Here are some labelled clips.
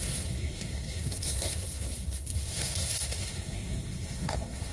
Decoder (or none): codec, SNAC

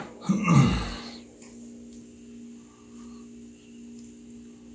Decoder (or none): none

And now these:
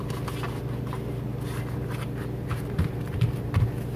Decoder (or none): none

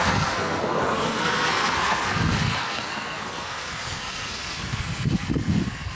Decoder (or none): codec, SNAC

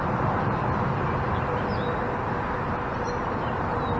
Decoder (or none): none